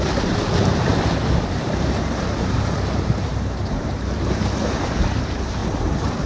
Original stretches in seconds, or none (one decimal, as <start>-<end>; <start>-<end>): 0.9-1.6; 5.6-6.3